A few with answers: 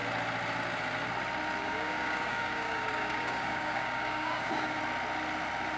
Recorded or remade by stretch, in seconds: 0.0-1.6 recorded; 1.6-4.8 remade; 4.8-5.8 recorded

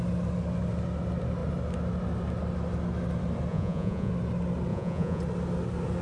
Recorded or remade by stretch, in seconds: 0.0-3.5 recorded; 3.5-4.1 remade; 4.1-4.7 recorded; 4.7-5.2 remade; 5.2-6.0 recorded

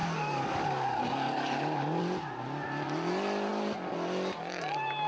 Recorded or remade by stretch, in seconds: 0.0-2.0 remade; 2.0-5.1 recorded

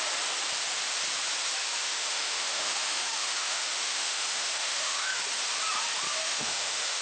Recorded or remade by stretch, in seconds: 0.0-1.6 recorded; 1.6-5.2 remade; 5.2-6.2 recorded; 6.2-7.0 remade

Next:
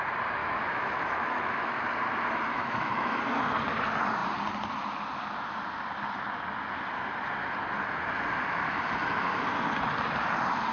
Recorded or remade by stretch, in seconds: 0.0-0.4 recorded; 0.4-1.8 remade; 1.8-2.5 recorded; 2.5-3.2 remade; 3.2-10.7 recorded

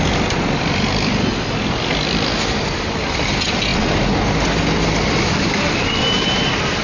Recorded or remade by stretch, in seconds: 0.0-6.8 recorded

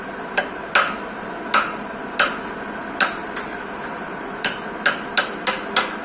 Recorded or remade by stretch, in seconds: 0.0-6.0 recorded